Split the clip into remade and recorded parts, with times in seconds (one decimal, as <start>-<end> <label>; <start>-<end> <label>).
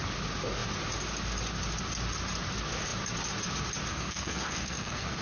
0.0-3.9 recorded; 3.9-5.2 remade